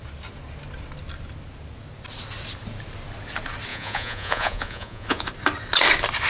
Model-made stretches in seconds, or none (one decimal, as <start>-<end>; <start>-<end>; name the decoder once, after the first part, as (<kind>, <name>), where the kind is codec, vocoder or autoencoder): 3.7-5.3 (vocoder, Vocos)